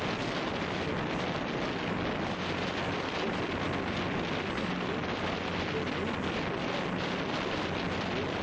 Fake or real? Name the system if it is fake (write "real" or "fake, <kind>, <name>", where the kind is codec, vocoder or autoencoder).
real